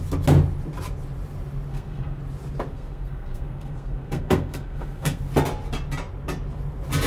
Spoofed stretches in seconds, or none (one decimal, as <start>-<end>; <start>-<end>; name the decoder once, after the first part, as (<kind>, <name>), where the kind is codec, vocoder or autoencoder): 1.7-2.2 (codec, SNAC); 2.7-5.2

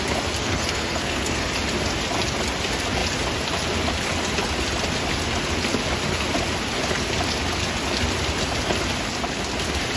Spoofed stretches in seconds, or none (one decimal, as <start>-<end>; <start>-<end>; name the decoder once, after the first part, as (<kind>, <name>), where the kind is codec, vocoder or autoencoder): 0.4-1.5 (codec, SNAC)

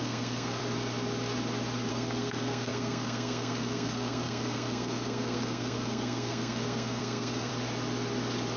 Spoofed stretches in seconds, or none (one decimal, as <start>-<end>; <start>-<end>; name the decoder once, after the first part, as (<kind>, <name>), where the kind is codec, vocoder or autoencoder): 0.0-0.6 (codec, SNAC); 1.9-7.5

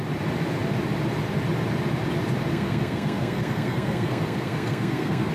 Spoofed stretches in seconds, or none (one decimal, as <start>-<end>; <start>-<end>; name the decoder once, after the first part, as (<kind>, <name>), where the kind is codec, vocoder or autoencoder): 2.5-5.3 (codec, SNAC)

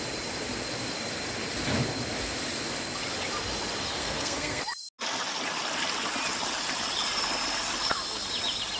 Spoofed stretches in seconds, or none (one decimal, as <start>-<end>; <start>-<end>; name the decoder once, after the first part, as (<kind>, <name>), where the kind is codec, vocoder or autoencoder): 4.0-4.6 (codec, SNAC)